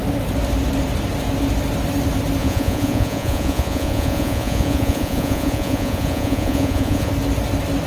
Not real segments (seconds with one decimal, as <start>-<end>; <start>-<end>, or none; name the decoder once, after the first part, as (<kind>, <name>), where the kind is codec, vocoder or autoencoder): 2.4-7.1 (vocoder, Vocos)